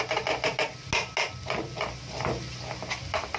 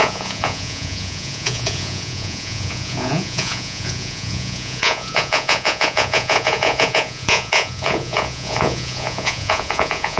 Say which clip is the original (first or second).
first